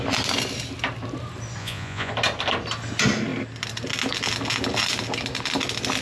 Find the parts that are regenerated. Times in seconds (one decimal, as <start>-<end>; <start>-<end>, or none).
1.6-2.1